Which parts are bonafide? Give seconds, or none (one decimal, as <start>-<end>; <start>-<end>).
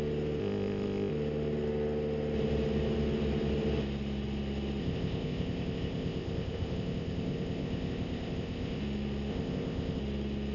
0.0-0.4; 1.1-4.8; 8.8-9.3; 10.0-10.5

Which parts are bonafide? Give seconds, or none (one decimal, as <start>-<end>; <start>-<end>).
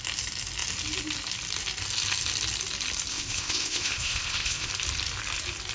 0.0-3.1; 4.7-5.7